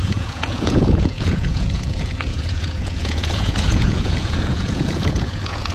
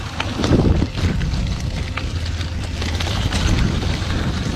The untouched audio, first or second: second